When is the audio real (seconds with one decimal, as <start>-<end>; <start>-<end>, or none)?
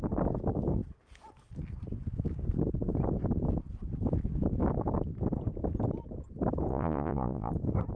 0.0-6.7; 7.5-7.9